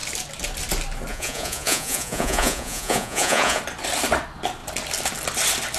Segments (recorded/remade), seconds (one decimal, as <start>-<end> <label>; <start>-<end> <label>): 0.0-1.1 recorded; 1.1-3.6 remade; 3.6-5.8 recorded